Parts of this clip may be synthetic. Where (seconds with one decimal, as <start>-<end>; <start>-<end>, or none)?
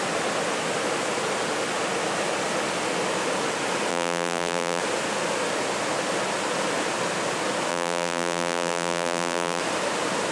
3.9-4.8; 7.7-9.6